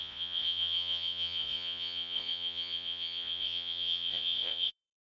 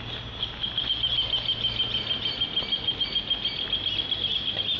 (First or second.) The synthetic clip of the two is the first